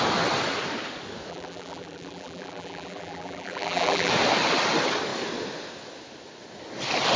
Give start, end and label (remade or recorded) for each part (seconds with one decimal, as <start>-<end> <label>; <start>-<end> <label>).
0.0-1.3 recorded; 1.3-4.1 remade; 4.1-7.2 recorded